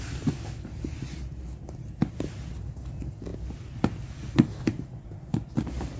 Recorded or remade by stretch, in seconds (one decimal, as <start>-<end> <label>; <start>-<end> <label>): 0.0-6.0 recorded